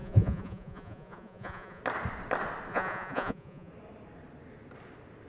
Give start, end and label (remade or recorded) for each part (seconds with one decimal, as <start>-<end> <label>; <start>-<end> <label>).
0.0-1.8 remade; 1.8-2.7 recorded; 2.7-3.7 remade; 3.7-5.3 recorded